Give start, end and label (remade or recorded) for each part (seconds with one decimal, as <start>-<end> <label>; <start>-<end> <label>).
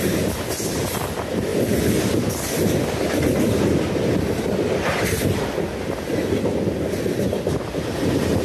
0.0-8.4 recorded